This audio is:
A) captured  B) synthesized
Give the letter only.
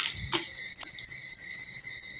A